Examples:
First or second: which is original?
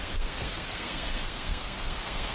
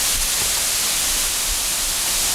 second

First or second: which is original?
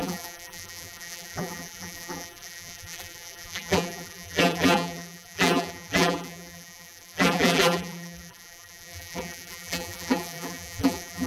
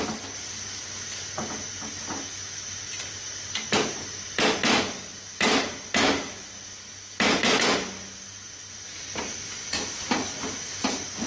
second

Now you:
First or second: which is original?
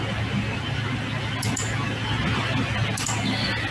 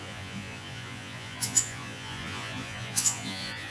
first